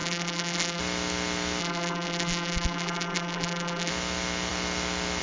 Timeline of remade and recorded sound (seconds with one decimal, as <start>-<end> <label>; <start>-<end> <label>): 0.0-0.8 remade; 0.8-1.6 recorded; 1.6-3.9 remade; 3.9-5.2 recorded